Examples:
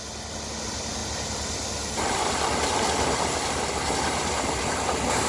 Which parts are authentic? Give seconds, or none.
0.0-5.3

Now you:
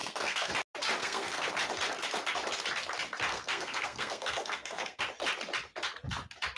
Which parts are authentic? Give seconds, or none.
0.5-1.0; 1.5-3.3; 5.0-6.6

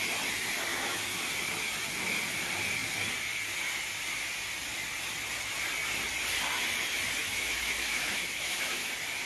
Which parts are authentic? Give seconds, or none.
0.0-0.7; 1.3-7.2; 8.9-9.3

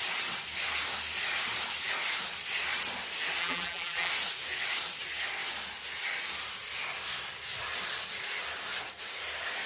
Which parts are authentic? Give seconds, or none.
0.0-3.4; 4.1-9.7